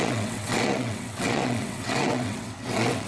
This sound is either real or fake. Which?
fake